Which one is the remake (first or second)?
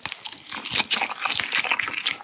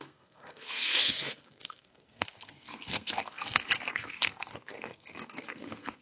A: second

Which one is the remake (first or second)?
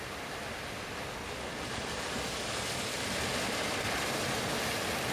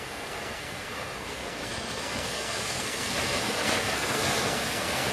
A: second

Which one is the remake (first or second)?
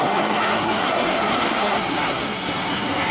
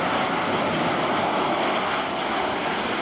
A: first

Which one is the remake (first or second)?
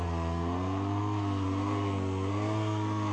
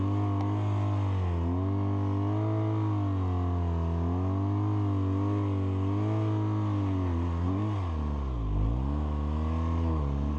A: first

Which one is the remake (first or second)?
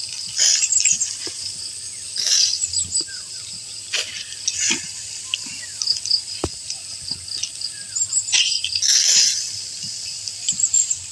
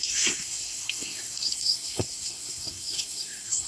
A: second